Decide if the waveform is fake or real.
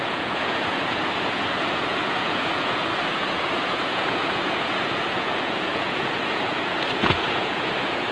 fake